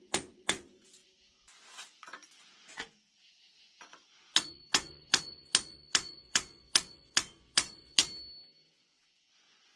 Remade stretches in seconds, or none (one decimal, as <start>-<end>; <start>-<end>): 0.0-8.0; 8.7-9.8